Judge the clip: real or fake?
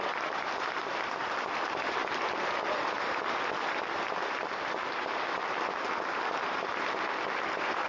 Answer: real